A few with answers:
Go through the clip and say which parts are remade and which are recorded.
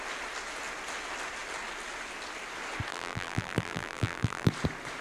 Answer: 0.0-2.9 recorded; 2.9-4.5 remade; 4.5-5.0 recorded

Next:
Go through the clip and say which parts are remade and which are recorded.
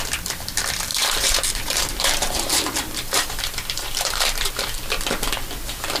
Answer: 0.0-0.9 recorded; 0.9-4.5 remade; 4.5-6.0 recorded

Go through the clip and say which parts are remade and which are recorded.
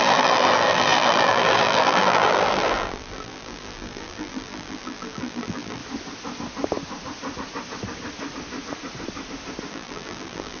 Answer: 0.0-5.8 remade; 5.8-9.7 recorded; 9.7-10.6 remade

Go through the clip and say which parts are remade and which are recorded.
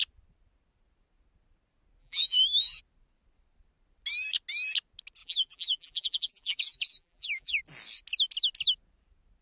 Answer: 0.0-2.0 recorded; 2.0-2.8 remade; 2.8-5.2 recorded; 5.2-7.6 remade; 7.6-9.4 recorded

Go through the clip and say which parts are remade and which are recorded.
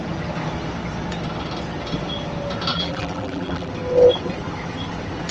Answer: 0.0-2.7 recorded; 2.7-3.7 remade; 3.7-5.3 recorded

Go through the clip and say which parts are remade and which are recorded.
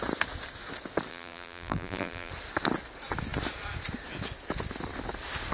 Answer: 0.0-1.1 recorded; 1.1-2.3 remade; 2.3-5.5 recorded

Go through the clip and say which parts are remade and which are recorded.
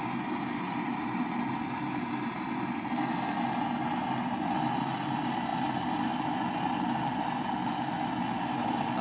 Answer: 0.0-9.0 recorded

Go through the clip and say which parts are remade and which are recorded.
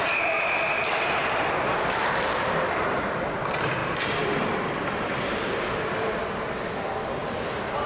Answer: 0.0-3.8 recorded; 3.8-5.3 remade; 5.3-7.9 recorded